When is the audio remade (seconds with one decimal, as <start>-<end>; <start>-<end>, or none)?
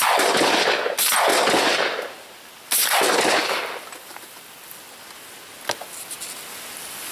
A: none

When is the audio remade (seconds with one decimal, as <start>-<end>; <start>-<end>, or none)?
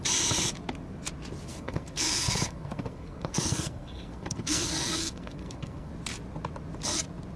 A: 1.5-5.9